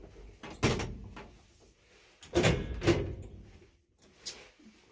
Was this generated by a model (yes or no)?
no